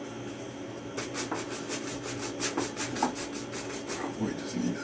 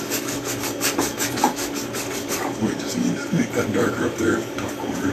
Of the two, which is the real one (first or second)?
first